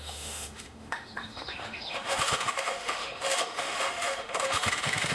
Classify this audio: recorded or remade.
remade